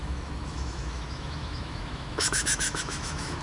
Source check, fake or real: fake